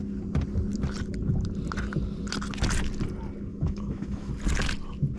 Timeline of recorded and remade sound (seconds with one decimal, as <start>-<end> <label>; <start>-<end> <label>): 0.0-3.5 recorded; 3.5-4.3 remade; 4.3-5.2 recorded